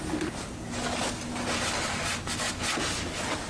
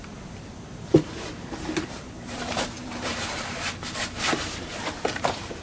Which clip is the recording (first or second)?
first